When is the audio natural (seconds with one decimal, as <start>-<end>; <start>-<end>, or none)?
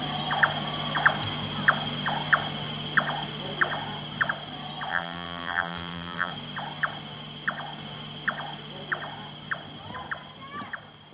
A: 0.0-4.9; 6.3-11.1